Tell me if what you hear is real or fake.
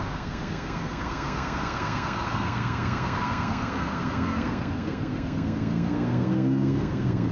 fake